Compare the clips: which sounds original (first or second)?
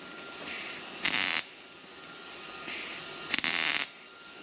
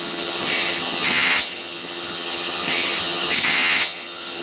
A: first